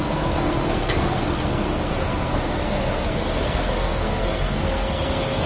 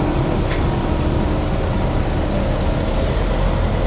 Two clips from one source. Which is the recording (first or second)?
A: second